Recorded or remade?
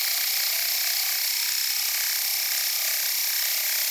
recorded